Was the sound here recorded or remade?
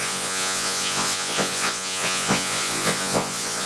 remade